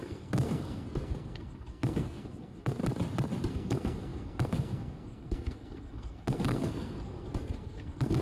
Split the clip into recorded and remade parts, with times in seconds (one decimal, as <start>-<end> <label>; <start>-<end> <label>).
0.0-2.8 remade; 2.8-3.5 recorded; 3.5-8.2 remade